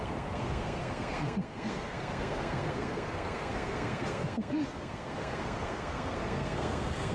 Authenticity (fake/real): fake